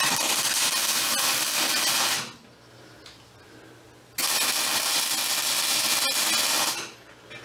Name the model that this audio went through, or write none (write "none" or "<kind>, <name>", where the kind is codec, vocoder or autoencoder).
none